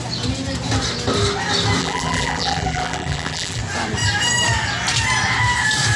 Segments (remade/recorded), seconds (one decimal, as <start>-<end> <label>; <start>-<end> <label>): 0.0-1.8 recorded; 1.8-3.6 remade; 3.6-6.0 recorded